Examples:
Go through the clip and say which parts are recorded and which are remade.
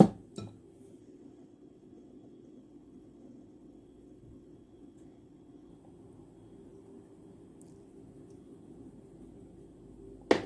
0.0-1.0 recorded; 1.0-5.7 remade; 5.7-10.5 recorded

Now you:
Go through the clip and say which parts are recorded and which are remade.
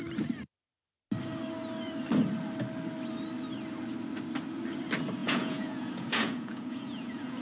0.0-5.2 recorded; 5.2-7.4 remade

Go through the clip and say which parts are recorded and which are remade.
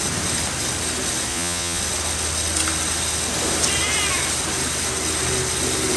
0.0-1.3 recorded; 1.3-1.8 remade; 1.8-6.0 recorded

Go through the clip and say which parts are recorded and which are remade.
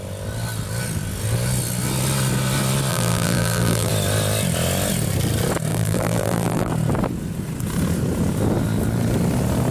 0.0-2.9 recorded; 2.9-3.9 remade; 3.9-5.7 recorded; 5.7-6.7 remade; 6.7-9.7 recorded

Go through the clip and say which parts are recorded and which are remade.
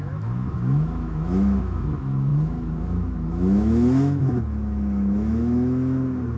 0.0-6.4 remade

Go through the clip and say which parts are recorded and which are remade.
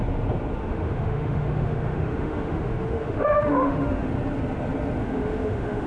0.0-0.6 recorded; 0.6-4.1 remade; 4.1-5.0 recorded; 5.0-5.9 remade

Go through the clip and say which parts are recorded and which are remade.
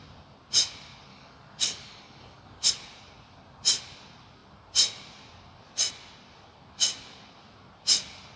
0.0-1.1 recorded; 1.1-2.7 remade; 2.7-8.4 recorded